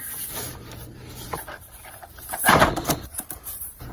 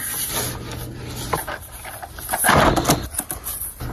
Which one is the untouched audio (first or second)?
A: second